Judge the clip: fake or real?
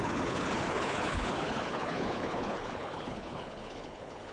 fake